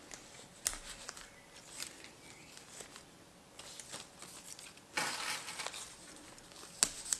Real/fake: real